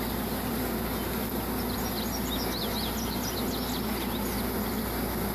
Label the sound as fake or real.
real